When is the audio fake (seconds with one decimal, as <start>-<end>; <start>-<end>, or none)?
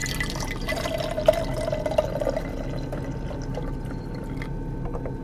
none